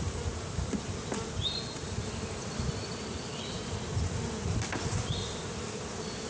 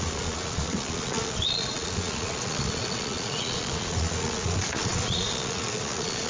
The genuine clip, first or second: first